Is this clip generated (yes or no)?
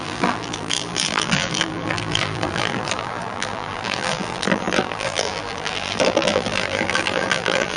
yes